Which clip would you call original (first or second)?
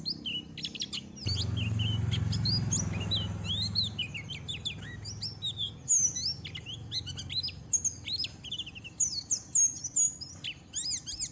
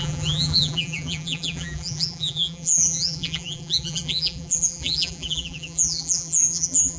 first